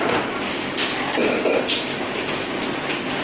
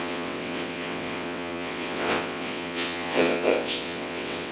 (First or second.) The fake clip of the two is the second